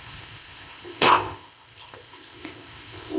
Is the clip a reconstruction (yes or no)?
yes